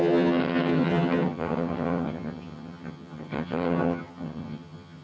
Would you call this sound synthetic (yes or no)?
yes